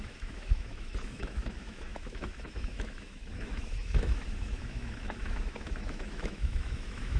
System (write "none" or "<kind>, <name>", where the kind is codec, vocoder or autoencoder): autoencoder, DAC-VAE